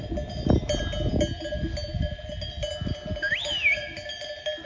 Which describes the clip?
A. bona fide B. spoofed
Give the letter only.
A